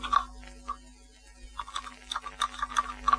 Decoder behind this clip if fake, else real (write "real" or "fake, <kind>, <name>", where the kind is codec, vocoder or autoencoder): real